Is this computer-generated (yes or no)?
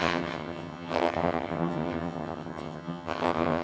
yes